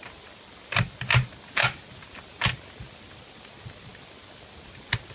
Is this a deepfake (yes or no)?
no